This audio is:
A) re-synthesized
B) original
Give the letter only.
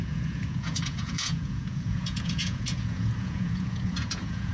A